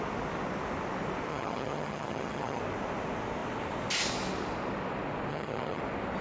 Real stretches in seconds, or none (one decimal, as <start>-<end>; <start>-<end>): 0.0-1.3; 2.6-5.3; 5.8-6.2